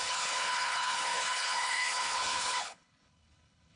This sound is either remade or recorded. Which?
remade